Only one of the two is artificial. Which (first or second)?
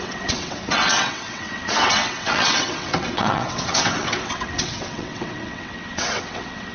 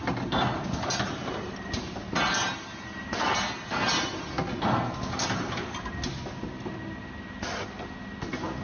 first